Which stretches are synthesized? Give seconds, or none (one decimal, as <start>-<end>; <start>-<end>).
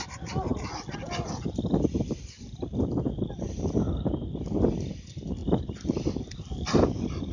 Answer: none